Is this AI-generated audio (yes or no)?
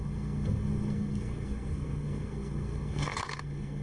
yes